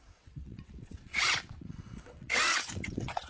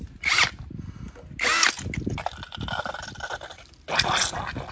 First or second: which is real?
second